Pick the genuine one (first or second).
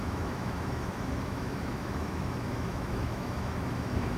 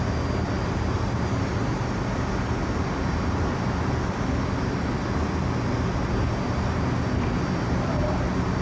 second